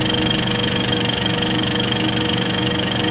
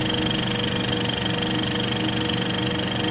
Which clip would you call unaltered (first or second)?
second